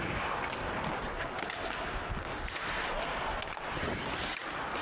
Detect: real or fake real